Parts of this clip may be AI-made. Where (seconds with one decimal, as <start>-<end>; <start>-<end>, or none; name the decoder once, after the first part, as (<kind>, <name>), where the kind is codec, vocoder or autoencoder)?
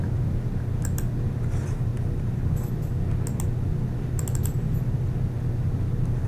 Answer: none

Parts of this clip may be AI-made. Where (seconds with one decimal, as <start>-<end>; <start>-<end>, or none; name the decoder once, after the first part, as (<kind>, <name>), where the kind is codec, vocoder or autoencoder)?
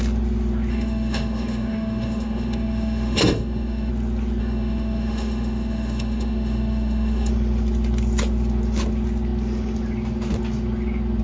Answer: 0.7-3.9 (autoencoder, DAC-VAE); 4.4-7.3